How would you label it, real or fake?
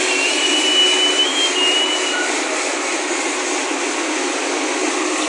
real